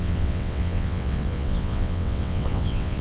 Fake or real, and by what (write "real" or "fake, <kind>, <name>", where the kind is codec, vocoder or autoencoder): fake, vocoder, WaveNeXt